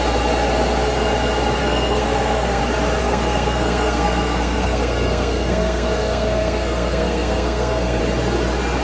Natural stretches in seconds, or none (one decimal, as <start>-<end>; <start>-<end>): 0.0-1.6; 2.6-3.0; 8.0-8.8